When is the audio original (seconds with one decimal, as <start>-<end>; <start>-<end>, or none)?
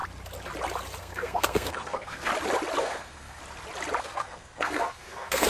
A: 0.0-1.0; 2.3-2.8; 3.4-4.0